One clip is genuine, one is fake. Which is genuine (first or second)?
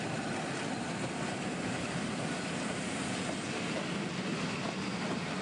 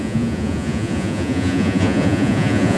first